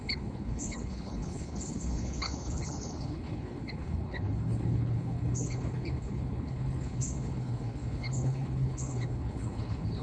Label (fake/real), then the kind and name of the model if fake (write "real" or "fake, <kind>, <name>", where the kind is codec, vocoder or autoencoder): fake, codec, HILCodec